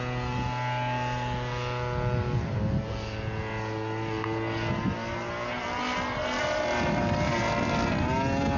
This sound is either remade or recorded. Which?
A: recorded